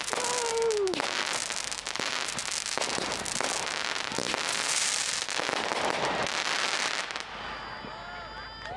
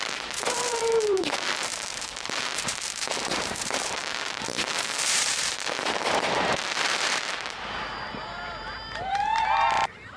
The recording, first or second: first